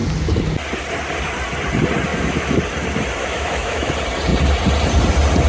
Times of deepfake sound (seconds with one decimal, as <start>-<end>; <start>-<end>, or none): 2.1-2.6; 3.2-3.9